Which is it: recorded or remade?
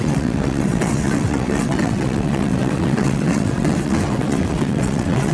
remade